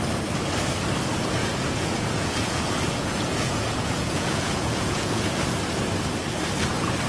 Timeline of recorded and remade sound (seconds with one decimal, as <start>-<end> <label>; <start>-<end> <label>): 0.0-1.4 recorded; 1.4-5.4 remade; 5.4-7.1 recorded